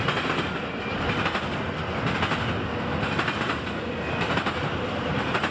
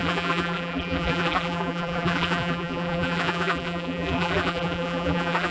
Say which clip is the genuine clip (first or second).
first